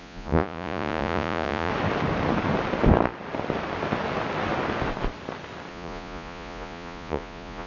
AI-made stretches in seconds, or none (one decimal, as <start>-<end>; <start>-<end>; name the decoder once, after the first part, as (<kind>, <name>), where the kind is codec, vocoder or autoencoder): 0.0-1.7 (vocoder, Vocos); 5.7-7.7